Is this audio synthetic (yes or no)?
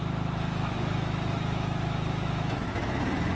yes